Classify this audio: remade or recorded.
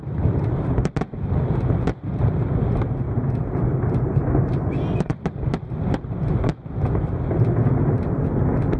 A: recorded